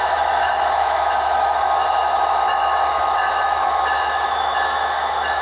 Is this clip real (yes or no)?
no